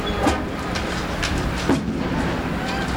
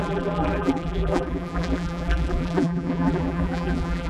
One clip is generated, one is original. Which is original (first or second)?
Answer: first